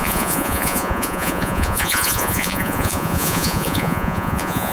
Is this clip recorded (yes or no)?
no